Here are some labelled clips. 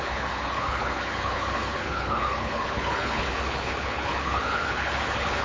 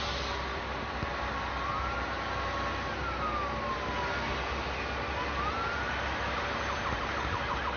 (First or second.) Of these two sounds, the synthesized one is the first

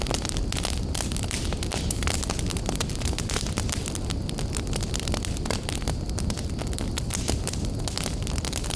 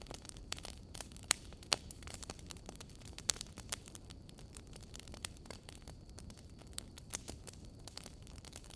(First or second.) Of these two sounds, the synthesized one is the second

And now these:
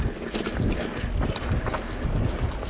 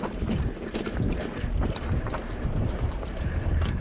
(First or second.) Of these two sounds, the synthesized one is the second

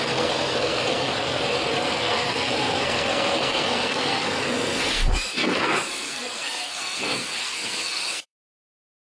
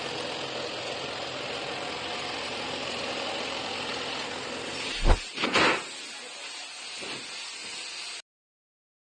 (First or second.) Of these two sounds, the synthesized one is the first